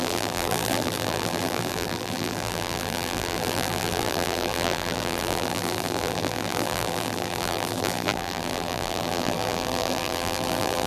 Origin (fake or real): fake